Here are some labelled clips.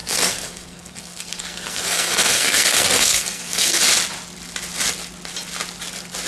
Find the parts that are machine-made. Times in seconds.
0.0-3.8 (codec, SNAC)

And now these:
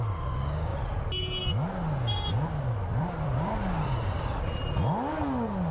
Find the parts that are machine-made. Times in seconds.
2.9-4.5 (vocoder, BigVGAN v2)

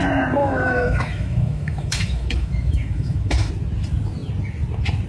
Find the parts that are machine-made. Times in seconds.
0.4-3.5 (autoencoder, DAC-VAE)

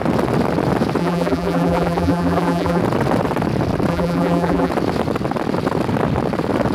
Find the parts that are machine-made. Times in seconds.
1.0-2.8 (vocoder, BigVGAN v2); 3.9-4.7

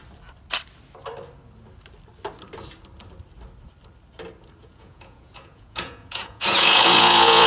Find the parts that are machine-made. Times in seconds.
4.6-7.5 (vocoder, Vocos)

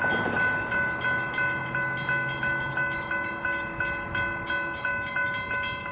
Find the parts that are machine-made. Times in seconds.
none